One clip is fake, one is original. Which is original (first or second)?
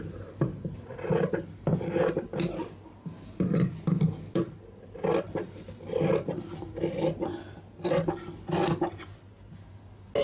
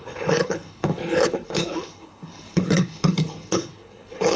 first